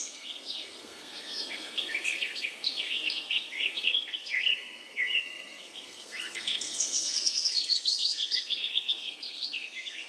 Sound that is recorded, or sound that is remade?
remade